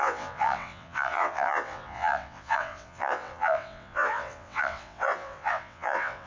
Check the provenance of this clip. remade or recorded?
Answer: remade